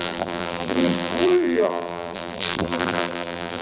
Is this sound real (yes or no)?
no